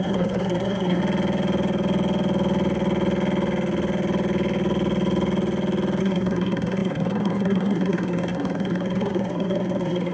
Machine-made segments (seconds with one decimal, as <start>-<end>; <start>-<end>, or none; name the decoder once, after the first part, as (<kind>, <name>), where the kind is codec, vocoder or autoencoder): 0.0-1.0 (codec, SNAC); 6.0-10.1